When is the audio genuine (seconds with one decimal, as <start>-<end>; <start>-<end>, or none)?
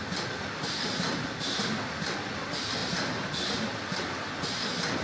0.0-1.1; 1.6-2.8; 3.5-5.0